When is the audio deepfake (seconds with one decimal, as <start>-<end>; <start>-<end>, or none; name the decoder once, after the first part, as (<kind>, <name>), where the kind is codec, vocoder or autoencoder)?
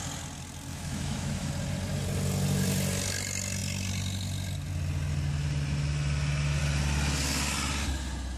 0.7-1.5 (autoencoder, DAC-VAE)